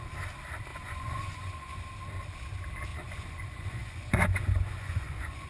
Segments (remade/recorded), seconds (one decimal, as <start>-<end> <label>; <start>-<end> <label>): 0.0-0.7 recorded; 0.7-1.8 remade; 1.8-2.9 recorded; 2.9-5.5 remade